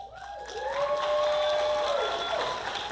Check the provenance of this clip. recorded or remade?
recorded